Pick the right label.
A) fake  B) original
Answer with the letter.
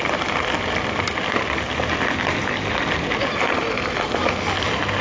B